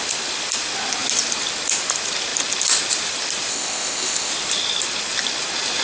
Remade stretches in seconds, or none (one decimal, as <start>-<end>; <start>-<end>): 3.5-4.3